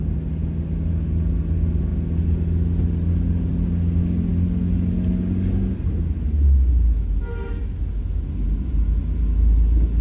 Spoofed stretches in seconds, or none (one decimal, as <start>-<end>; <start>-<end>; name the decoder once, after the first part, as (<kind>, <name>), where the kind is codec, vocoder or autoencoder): none